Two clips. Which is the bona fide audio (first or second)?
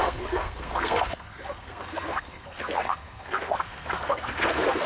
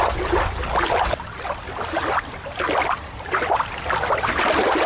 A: second